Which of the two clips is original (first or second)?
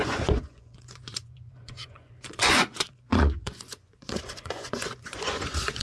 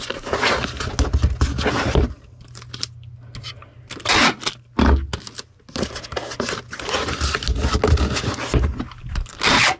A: second